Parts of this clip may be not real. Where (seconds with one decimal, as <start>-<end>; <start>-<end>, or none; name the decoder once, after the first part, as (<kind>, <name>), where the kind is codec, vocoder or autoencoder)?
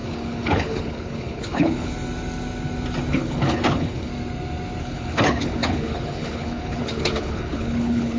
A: 0.0-1.9 (codec, HILCodec); 3.1-4.1; 4.8-8.2